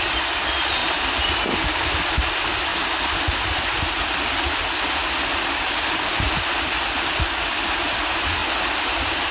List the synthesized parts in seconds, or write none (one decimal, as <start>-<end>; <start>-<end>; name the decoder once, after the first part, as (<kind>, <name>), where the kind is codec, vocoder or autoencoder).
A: none